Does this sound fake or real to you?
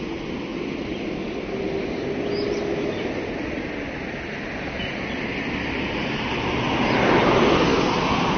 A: real